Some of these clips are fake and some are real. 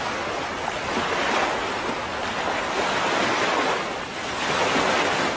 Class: real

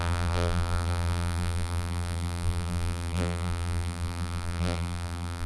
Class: fake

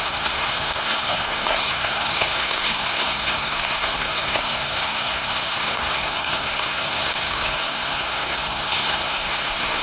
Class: fake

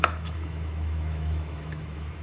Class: fake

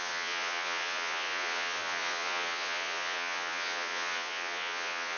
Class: fake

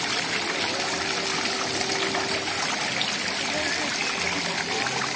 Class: real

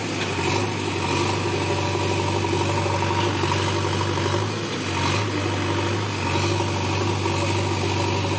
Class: real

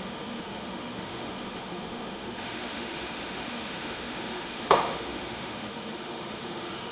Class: fake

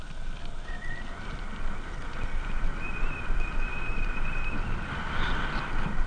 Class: real